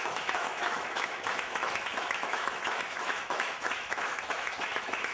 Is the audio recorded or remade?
remade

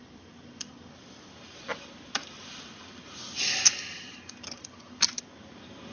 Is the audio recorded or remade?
recorded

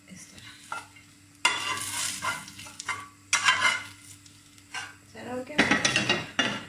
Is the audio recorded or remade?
recorded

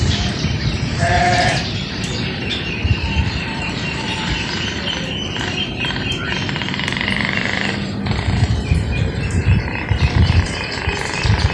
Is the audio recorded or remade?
remade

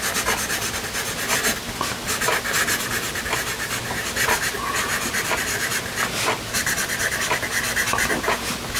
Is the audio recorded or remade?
recorded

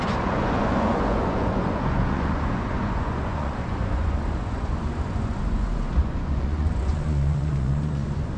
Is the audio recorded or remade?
remade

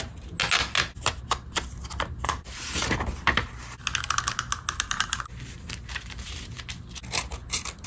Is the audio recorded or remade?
recorded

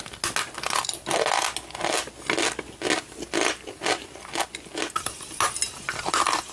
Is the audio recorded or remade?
recorded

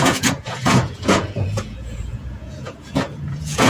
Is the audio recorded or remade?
remade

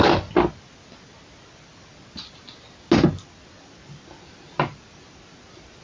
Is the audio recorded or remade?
recorded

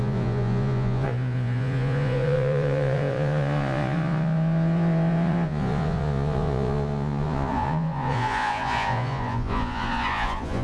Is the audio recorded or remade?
remade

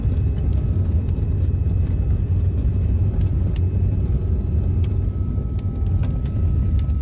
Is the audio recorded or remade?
recorded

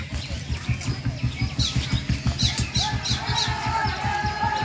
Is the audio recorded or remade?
recorded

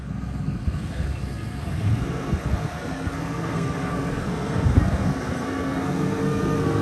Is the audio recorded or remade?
remade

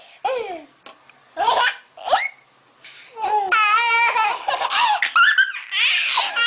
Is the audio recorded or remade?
recorded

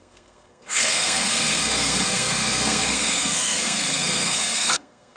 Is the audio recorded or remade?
remade